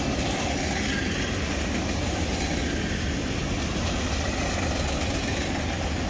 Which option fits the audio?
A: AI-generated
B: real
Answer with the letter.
B